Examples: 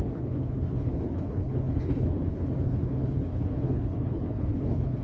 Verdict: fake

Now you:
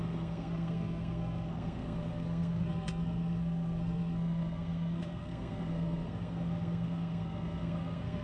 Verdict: fake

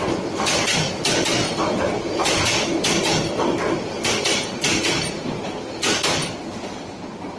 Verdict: real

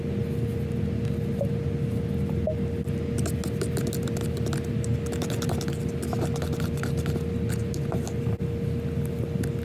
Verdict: real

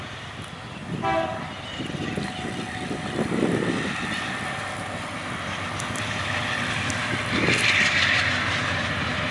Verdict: real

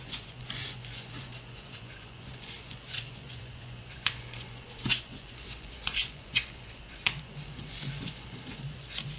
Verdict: fake